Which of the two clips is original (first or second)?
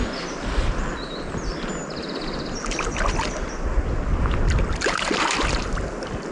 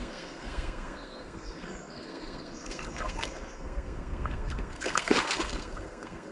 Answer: first